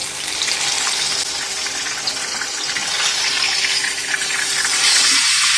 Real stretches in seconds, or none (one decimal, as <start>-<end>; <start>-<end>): 0.0-2.8; 3.6-5.6